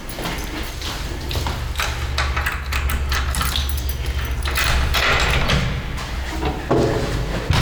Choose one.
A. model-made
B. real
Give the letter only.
B